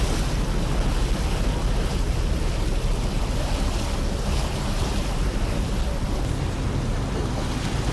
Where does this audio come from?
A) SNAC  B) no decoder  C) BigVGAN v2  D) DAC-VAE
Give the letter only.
B